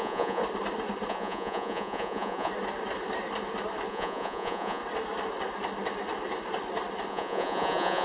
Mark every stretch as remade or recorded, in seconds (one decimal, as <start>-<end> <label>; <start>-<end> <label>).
0.0-0.4 remade; 0.4-1.1 recorded; 1.1-2.5 remade; 2.5-3.9 recorded; 3.9-4.8 remade; 4.8-7.1 recorded; 7.1-8.0 remade